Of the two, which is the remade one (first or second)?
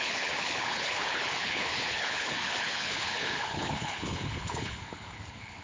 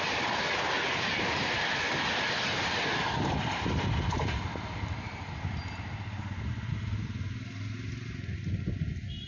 first